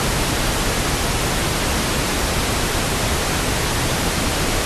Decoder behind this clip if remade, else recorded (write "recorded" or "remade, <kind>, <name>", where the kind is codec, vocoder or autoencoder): recorded